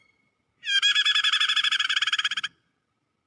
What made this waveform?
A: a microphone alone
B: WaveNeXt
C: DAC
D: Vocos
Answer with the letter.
A